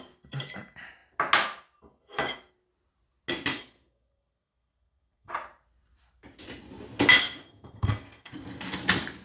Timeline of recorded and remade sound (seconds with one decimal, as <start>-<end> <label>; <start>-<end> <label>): 0.0-3.5 recorded; 3.5-5.3 remade; 5.3-7.2 recorded; 7.2-8.3 remade; 8.3-9.2 recorded